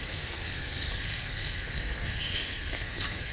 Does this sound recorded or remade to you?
remade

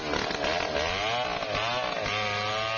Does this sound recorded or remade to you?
recorded